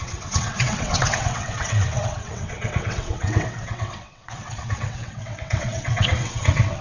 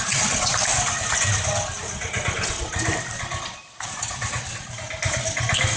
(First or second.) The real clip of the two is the second